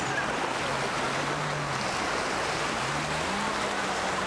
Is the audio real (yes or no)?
yes